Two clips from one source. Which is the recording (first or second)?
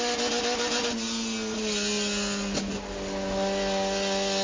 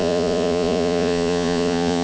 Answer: first